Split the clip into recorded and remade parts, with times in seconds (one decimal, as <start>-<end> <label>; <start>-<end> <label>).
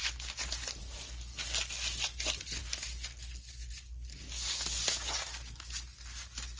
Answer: 0.0-6.6 recorded